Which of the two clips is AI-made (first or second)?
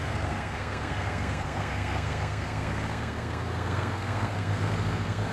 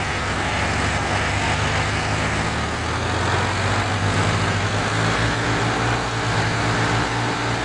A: first